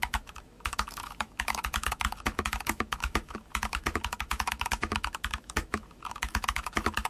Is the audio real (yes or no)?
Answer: no